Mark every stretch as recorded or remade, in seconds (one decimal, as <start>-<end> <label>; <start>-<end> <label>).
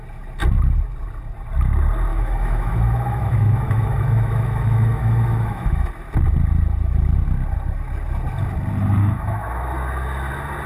0.0-2.1 recorded; 2.1-5.9 remade; 5.9-9.0 recorded; 9.0-9.7 remade; 9.7-10.7 recorded